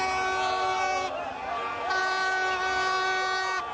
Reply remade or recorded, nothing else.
recorded